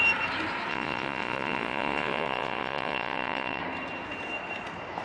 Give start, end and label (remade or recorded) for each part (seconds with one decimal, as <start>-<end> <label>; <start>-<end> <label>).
0.0-0.7 recorded; 0.7-3.6 remade; 3.6-5.0 recorded